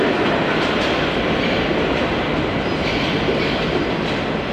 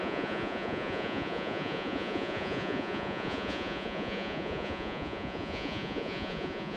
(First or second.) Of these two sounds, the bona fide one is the first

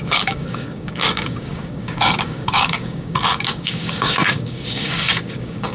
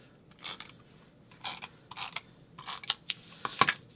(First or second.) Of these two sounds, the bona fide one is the second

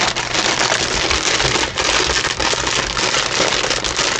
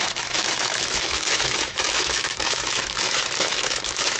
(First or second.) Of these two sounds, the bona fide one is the first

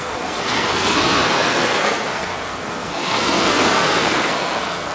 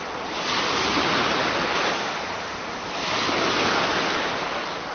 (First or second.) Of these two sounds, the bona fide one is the second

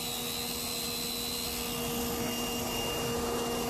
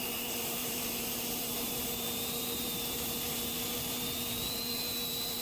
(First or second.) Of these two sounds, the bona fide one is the first